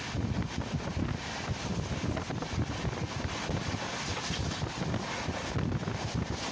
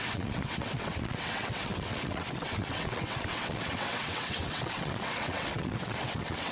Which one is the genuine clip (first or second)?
first